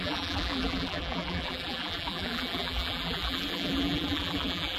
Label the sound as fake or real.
fake